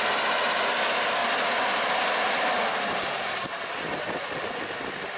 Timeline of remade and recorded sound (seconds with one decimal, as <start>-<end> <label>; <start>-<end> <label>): 0.0-5.2 recorded